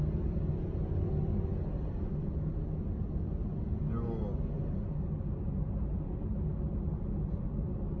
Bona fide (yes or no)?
yes